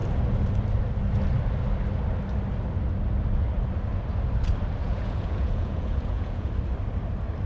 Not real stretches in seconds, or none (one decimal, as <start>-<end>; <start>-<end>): 4.8-6.5

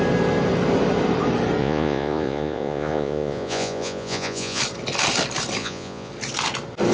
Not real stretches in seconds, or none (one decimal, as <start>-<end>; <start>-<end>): 1.6-4.6; 5.6-6.1

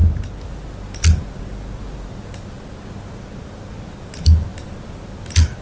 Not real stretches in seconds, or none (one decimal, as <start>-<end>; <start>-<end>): none

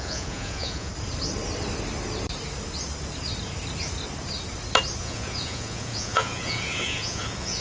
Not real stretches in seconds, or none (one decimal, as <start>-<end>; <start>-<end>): 0.0-0.9; 5.0-7.6

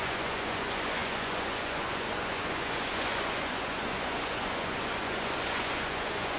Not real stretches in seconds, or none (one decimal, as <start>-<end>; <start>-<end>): 0.0-6.4